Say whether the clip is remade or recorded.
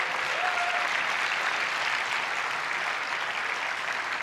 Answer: recorded